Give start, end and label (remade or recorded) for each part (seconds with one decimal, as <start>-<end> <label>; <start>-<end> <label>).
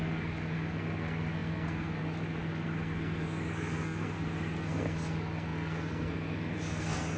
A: 0.0-7.2 remade